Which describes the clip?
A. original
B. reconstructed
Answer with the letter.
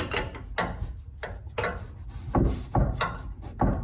A